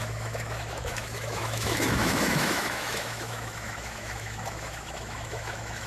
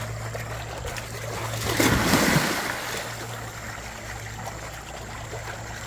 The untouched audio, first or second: second